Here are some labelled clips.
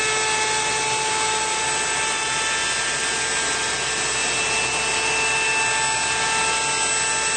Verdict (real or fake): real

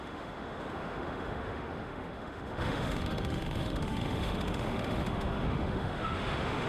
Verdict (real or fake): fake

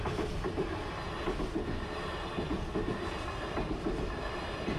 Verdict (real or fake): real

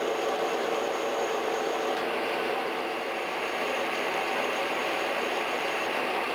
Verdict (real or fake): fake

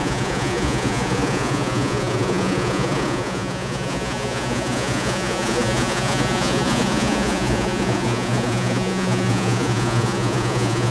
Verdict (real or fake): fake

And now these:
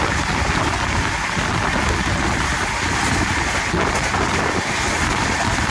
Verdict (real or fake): real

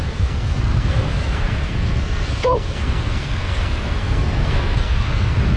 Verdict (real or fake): fake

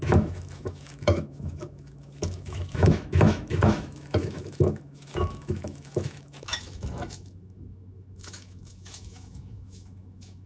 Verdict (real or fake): fake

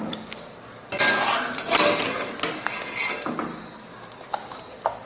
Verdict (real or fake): real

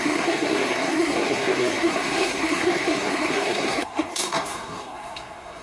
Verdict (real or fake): fake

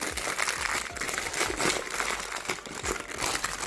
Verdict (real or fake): real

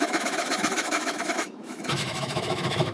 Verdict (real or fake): fake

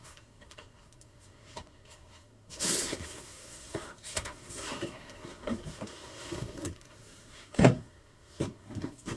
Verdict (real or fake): fake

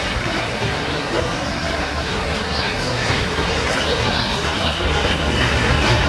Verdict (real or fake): fake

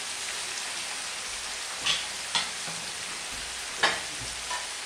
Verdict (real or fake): real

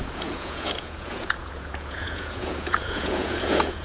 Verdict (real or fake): fake